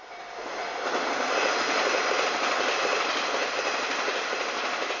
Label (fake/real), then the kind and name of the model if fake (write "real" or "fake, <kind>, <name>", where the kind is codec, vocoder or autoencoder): real